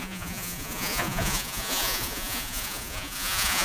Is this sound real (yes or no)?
no